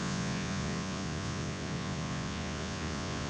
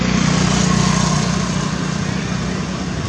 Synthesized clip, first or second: first